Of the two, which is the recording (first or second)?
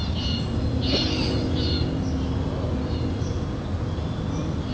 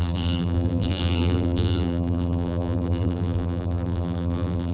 first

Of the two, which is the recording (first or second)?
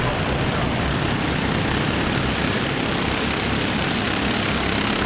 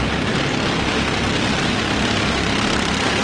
second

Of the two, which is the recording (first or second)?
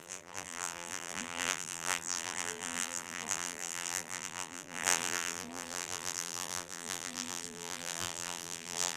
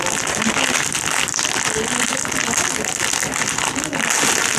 second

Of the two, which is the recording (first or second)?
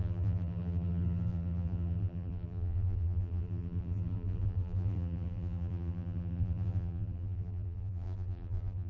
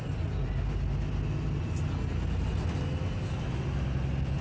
second